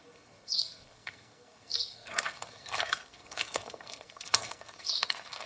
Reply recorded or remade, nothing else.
remade